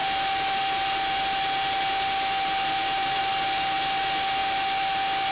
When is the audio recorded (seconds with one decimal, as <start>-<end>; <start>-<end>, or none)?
0.0-5.3